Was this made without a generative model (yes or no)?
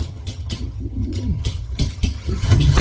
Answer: no